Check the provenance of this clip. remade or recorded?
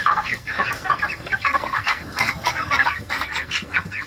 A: remade